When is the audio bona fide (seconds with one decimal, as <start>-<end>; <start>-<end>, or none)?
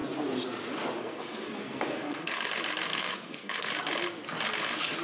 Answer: 0.0-1.0; 2.5-2.9; 3.7-5.0